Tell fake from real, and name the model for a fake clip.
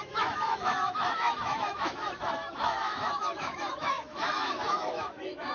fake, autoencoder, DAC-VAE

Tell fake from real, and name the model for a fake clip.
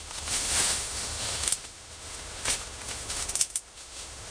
fake, autoencoder, DAC-VAE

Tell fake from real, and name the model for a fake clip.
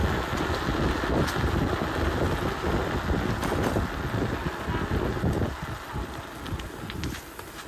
real